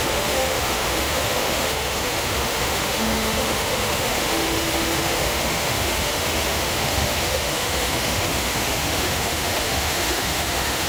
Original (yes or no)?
no